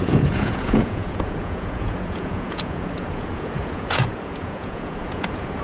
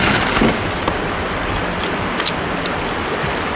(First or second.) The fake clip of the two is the first